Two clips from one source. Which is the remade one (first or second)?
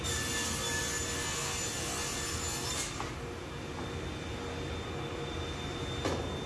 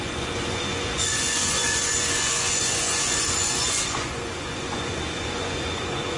second